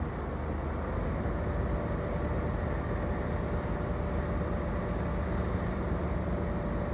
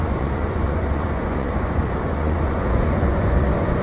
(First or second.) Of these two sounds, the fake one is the second